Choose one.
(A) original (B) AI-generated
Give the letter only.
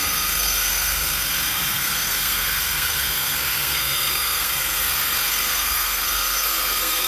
B